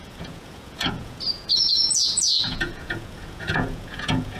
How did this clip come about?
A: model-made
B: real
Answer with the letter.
A